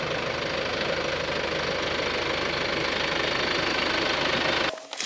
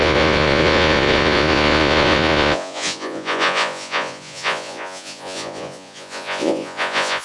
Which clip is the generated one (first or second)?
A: second